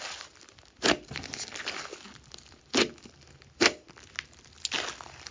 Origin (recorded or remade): recorded